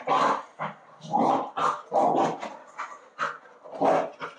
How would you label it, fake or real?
real